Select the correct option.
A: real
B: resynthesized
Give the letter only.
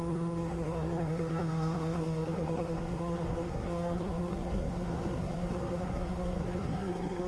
B